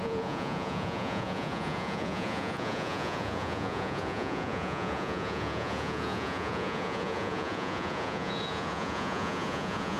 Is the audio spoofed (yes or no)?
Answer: yes